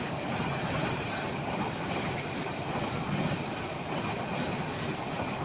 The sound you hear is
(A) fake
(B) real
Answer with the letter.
B